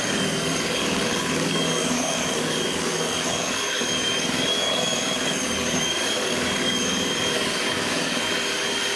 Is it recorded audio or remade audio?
remade